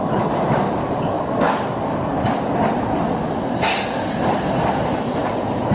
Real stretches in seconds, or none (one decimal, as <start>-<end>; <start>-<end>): 0.0-0.8; 2.4-5.7